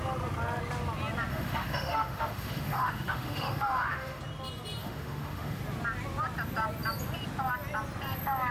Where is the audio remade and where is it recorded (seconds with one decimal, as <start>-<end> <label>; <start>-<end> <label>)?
0.0-1.3 recorded; 1.3-4.2 remade; 4.2-4.8 recorded; 4.8-5.6 remade; 5.6-8.5 recorded